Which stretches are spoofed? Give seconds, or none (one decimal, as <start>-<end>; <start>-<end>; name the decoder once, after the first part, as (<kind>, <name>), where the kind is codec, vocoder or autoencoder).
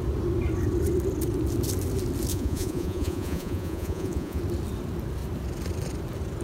2.3-4.4 (vocoder, Vocos)